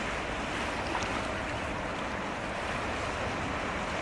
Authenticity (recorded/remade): recorded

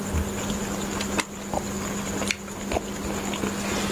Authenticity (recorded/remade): recorded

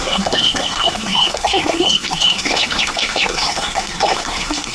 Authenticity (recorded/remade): remade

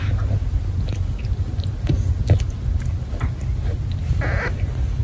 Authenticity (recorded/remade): recorded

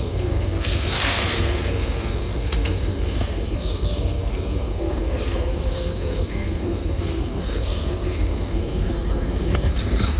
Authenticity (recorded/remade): remade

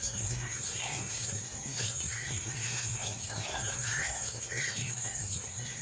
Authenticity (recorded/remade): remade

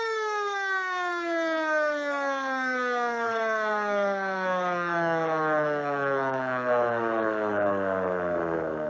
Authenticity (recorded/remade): remade